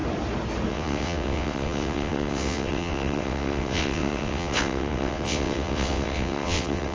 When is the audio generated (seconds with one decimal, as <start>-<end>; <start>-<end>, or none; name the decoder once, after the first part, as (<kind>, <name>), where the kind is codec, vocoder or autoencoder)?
0.7-6.9 (vocoder, WaveNeXt)